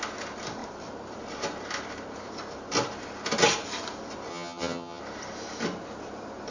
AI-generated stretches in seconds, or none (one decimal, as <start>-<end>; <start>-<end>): 4.3-5.0